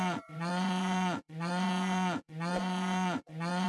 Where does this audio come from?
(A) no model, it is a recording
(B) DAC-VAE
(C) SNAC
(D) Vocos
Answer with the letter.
D